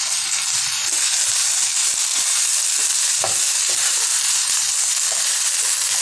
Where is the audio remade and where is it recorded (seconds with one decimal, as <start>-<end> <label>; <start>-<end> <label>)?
0.0-4.1 recorded; 4.1-4.6 remade; 4.6-6.0 recorded